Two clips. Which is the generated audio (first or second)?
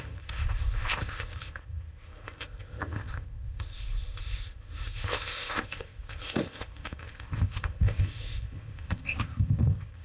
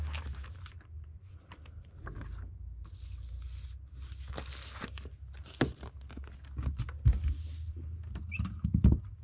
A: first